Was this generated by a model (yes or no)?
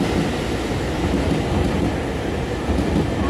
no